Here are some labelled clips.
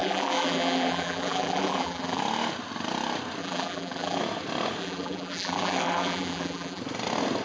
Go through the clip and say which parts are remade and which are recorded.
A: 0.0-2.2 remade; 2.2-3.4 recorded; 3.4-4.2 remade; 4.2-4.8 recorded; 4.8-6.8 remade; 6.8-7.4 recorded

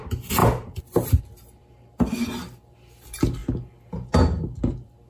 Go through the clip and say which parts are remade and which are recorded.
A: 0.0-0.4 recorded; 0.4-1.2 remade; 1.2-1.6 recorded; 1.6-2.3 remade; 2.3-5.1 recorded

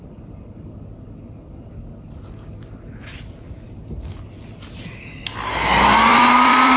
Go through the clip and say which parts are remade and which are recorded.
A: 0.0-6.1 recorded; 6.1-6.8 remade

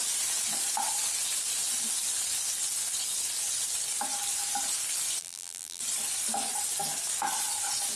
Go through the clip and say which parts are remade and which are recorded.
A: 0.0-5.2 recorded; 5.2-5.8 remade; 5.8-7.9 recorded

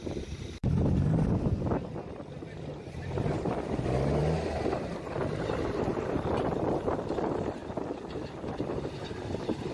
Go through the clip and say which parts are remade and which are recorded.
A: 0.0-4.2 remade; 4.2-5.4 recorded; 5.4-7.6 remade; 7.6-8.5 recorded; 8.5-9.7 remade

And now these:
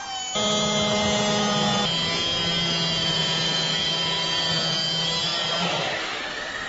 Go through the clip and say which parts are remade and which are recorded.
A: 0.0-3.0 recorded; 3.0-4.5 remade; 4.5-5.3 recorded; 5.3-6.2 remade; 6.2-6.7 recorded